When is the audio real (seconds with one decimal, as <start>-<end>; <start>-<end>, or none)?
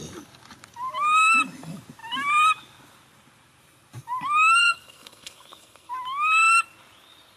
0.0-4.6; 5.9-7.4